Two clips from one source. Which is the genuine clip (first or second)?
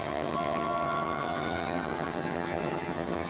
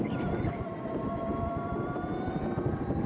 second